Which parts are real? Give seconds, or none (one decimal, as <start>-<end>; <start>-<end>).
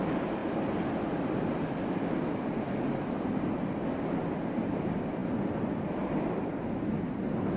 0.0-7.6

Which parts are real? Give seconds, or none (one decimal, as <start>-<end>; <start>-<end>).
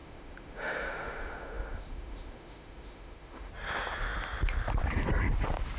3.5-5.8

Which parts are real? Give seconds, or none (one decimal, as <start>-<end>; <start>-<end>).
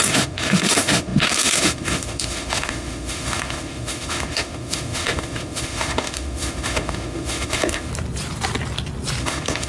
7.9-9.2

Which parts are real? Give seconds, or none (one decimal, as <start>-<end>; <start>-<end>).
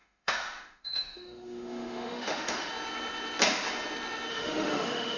2.7-4.3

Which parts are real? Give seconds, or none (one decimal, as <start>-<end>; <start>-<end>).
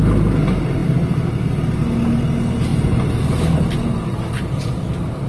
0.0-5.3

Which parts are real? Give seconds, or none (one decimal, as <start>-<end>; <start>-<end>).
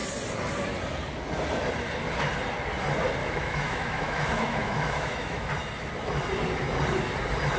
0.0-3.2; 5.5-7.6